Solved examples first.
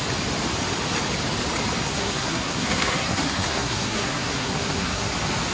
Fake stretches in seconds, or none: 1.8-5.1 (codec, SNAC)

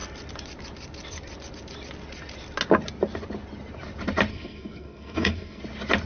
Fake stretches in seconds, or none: 4.3-5.6 (codec, SNAC)

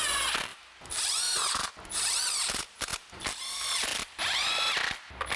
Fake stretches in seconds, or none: 0.5-1.7 (vocoder, BigVGAN v2)

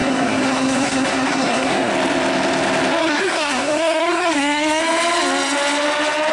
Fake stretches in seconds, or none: 0.0-1.9 (codec, SNAC); 3.0-4.8

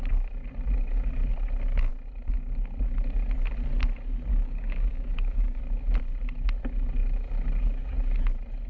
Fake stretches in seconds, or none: 4.3-5.6 (codec, DAC)

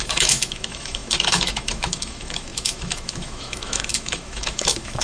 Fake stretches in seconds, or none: 0.0-5.0 (autoencoder, DAC-VAE)